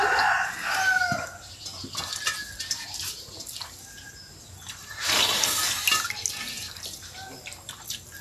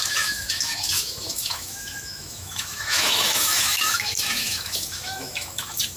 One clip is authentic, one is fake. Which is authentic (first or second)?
first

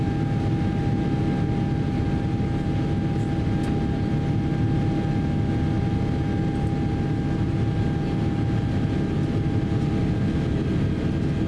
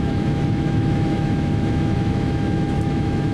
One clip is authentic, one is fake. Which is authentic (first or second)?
first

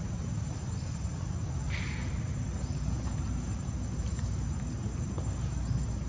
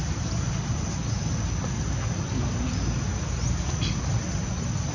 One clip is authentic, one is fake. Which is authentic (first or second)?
second